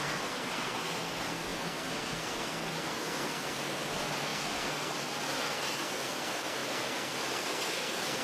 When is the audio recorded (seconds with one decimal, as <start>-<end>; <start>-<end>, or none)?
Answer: none